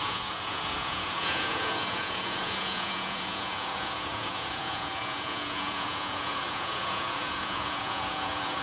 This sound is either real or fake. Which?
fake